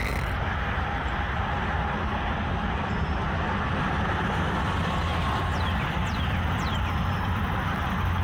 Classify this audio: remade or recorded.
remade